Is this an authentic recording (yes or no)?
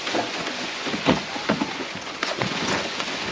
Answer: no